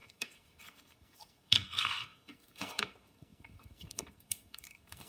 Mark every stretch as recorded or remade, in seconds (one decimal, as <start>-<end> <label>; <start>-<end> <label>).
0.0-5.1 remade